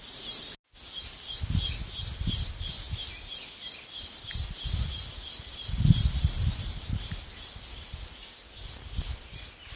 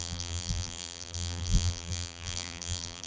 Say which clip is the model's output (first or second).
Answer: second